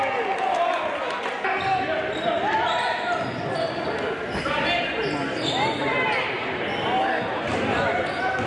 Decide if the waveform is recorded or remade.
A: recorded